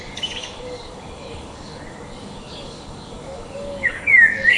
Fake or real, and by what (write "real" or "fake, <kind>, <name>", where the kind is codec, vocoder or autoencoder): fake, codec, DAC